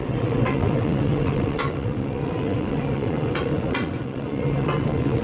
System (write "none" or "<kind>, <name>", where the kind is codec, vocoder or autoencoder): vocoder, WaveNeXt